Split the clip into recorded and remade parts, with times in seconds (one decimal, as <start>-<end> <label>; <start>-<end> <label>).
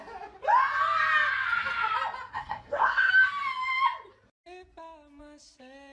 0.0-2.3 recorded; 2.3-3.1 remade; 3.1-5.9 recorded